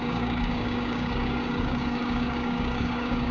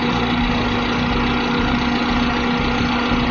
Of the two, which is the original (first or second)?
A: second